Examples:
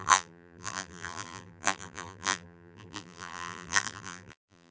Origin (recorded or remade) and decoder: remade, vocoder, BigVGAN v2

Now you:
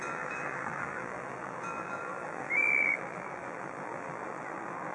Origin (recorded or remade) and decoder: remade, vocoder, BigVGAN v2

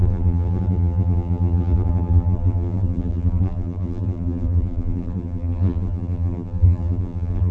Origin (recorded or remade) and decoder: remade, vocoder, BigVGAN v2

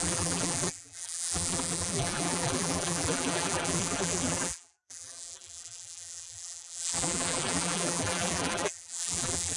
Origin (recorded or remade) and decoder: remade, vocoder, BigVGAN v2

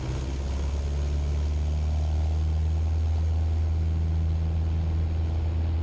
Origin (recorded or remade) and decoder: recorded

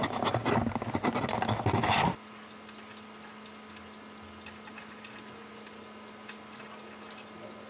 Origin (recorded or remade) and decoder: recorded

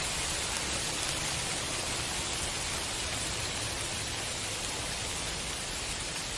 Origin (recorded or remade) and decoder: remade, vocoder, BigVGAN v2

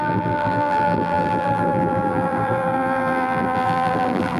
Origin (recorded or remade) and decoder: remade, vocoder, BigVGAN v2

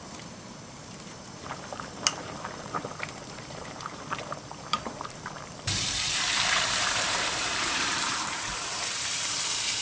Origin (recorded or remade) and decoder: remade, vocoder, BigVGAN v2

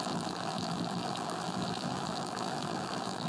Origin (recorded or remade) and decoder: remade, vocoder, BigVGAN v2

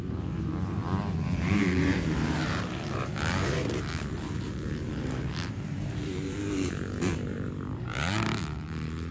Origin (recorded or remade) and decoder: remade, vocoder, BigVGAN v2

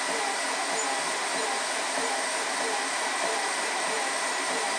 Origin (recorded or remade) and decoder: remade, vocoder, BigVGAN v2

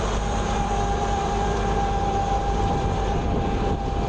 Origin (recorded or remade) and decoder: remade, vocoder, BigVGAN v2